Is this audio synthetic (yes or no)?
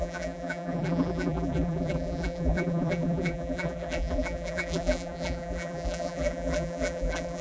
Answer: yes